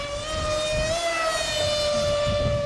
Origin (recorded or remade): recorded